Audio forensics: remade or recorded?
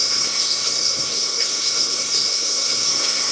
remade